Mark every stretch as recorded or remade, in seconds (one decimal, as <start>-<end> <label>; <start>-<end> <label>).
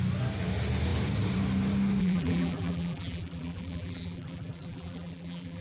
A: 0.0-2.0 recorded; 2.0-5.6 remade